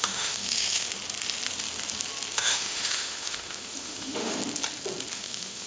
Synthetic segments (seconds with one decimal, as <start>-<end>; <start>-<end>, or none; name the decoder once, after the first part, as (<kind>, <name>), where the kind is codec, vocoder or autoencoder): 0.0-0.9 (autoencoder, DAC-VAE); 2.3-4.4; 5.1-5.7